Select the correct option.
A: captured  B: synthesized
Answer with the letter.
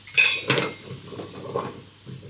A